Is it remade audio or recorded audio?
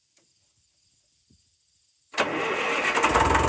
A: recorded